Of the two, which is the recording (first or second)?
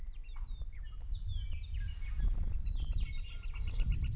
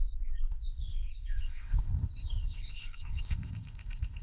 first